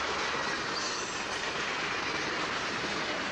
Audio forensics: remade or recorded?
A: recorded